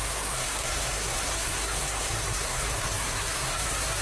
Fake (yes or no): yes